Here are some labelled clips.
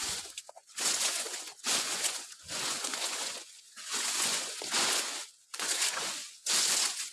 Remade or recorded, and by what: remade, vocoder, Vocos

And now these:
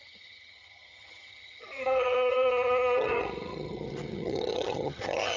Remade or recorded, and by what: remade, vocoder, HiFi-GAN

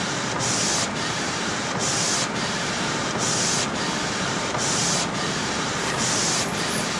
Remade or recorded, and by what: remade, vocoder, BigVGAN v2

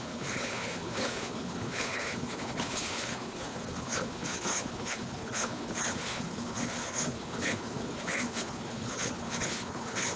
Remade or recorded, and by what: remade, codec, HILCodec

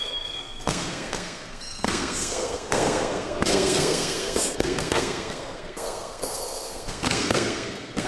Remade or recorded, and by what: remade, codec, SNAC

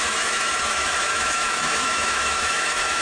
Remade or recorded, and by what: remade, autoencoder, DAC-VAE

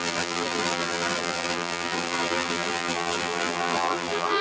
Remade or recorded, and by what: remade, vocoder, BigVGAN v2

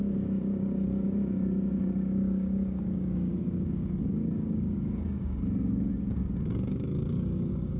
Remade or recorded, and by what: remade, codec, DAC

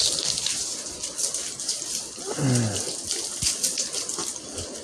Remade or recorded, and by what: recorded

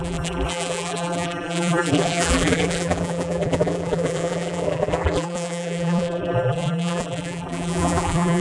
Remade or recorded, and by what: remade, vocoder, BigVGAN v2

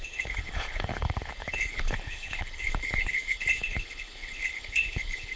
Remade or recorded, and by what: remade, codec, HILCodec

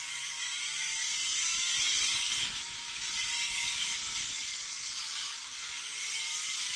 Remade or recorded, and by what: remade, codec, DAC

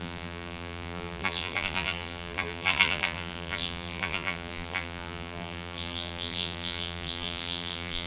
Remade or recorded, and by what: remade, vocoder, BigVGAN v2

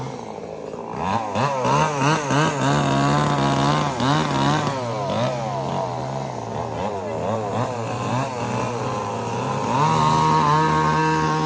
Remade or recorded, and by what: recorded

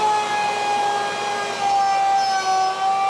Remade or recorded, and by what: recorded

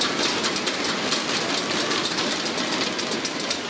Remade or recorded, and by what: recorded